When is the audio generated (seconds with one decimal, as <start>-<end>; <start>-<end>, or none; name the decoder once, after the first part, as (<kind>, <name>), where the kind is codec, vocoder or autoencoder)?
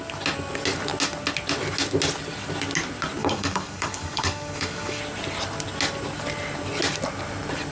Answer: 3.2-5.0 (codec, DAC)